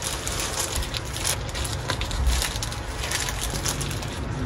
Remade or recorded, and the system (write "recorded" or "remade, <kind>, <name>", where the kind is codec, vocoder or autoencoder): recorded